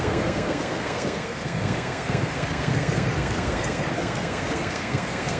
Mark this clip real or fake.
fake